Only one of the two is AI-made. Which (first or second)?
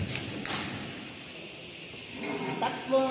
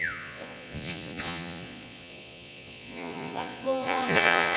second